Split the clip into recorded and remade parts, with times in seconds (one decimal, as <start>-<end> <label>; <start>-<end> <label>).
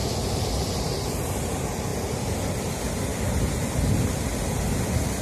0.0-5.2 recorded